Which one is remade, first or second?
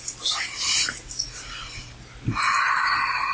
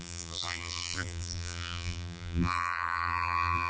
second